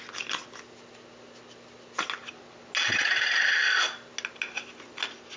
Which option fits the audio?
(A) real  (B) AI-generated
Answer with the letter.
A